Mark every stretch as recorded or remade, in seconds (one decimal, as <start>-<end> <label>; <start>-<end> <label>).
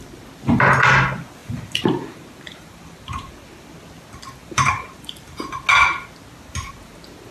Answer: 0.0-1.4 recorded; 1.4-3.3 remade; 3.3-4.4 recorded; 4.4-5.4 remade; 5.4-7.3 recorded